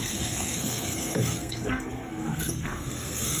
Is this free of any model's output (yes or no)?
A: no